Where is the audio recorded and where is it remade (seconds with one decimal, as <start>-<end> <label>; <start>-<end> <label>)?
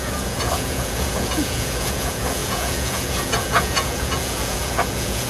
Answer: 0.0-5.3 remade